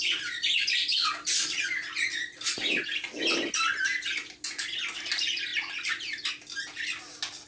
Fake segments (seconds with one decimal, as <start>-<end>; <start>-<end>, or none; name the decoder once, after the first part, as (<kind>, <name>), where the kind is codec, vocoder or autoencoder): none